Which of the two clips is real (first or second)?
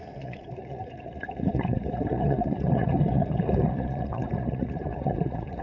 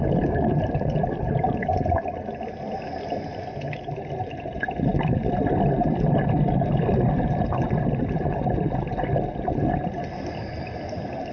second